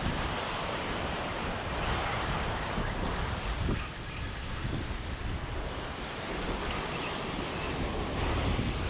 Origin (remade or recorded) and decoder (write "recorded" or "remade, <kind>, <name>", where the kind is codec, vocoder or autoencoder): recorded